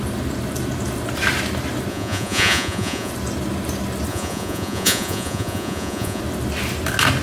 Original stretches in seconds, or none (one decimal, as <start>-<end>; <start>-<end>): 0.0-1.9; 3.1-4.1; 6.2-7.2